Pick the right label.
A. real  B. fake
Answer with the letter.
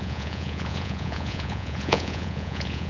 B